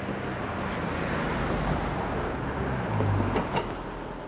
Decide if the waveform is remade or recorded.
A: recorded